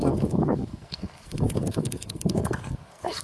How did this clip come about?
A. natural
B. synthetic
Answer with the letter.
B